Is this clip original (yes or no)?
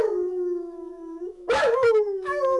no